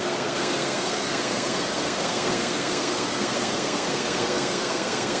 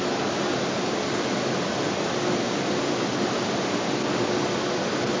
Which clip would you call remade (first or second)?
first